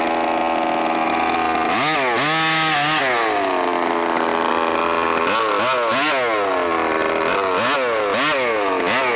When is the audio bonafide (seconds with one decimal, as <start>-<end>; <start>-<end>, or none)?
0.0-9.2